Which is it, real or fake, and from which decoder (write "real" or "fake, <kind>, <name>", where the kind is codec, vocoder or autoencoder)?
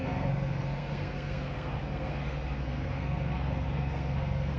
fake, codec, SNAC